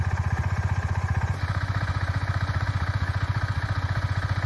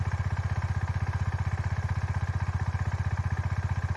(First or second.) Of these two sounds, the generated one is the first